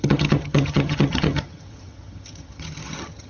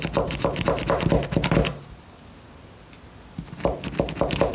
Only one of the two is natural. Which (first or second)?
second